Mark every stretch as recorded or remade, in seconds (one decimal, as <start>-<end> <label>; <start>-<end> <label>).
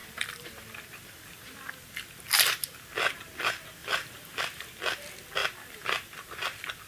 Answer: 0.0-1.9 remade; 1.9-3.8 recorded; 3.8-4.4 remade; 4.4-5.4 recorded; 5.4-6.9 remade